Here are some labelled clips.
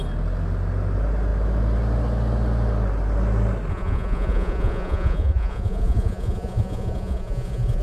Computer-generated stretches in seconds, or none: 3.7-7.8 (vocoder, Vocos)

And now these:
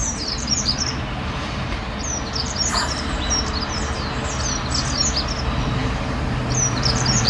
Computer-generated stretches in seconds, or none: 0.0-4.2 (vocoder, BigVGAN v2); 5.8-7.3

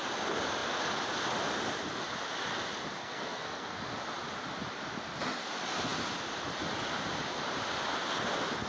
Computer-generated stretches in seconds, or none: 3.0-3.8 (codec, SNAC)

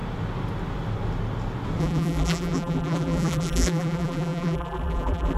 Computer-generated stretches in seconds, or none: 1.8-5.4 (vocoder, BigVGAN v2)

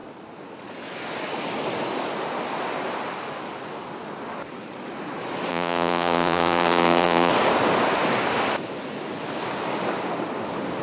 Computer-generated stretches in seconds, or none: 5.5-7.3 (vocoder, Vocos)

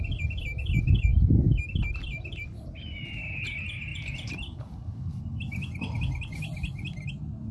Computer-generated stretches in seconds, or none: 3.9-4.6 (vocoder, BigVGAN v2)